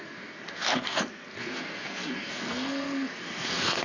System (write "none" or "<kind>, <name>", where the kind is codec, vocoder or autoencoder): codec, SNAC